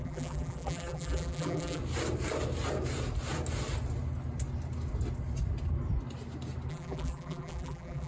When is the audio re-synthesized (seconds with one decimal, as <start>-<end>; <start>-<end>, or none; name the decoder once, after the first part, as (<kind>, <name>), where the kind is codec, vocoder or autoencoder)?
0.0-1.8 (vocoder, BigVGAN v2); 6.7-8.1